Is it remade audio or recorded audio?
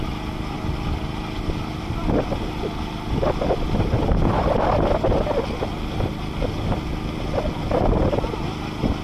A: recorded